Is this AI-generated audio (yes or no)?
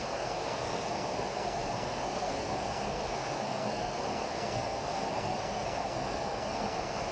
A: yes